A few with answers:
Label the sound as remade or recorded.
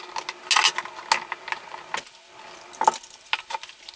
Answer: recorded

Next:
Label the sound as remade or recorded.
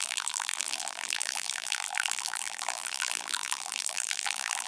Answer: remade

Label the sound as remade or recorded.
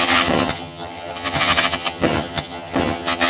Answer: remade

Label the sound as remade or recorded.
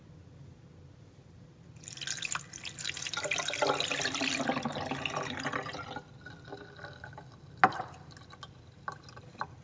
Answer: recorded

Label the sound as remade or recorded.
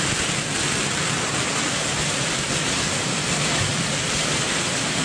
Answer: remade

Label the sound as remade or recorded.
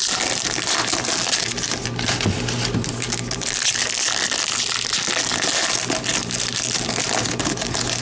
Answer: recorded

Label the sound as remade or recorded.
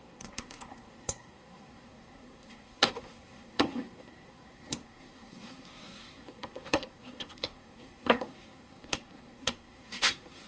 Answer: remade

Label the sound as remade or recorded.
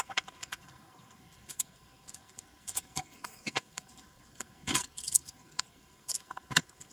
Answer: remade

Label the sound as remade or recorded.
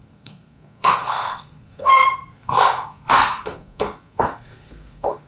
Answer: remade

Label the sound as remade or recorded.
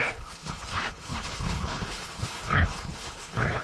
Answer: remade